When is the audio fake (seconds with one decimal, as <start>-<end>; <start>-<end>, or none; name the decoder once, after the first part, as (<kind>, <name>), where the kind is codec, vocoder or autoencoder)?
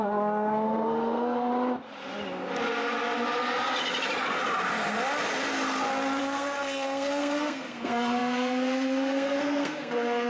0.0-1.5 (codec, SNAC); 6.2-10.3